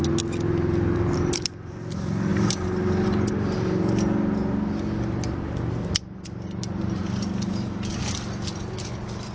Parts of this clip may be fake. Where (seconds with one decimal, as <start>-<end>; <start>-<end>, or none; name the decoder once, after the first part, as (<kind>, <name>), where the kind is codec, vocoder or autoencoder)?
none